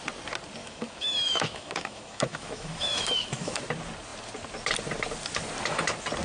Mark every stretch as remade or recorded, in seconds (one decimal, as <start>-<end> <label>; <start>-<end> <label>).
0.0-0.6 recorded; 0.6-3.6 remade; 3.6-6.2 recorded